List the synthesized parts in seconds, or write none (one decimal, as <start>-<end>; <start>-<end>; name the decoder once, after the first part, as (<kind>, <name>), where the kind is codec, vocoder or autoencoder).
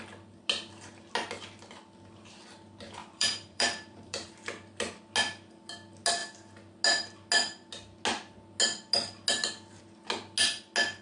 3.0-4.3 (vocoder, BigVGAN v2)